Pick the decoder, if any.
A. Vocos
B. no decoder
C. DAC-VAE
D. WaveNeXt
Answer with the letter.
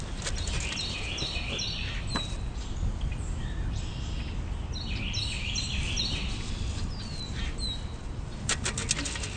B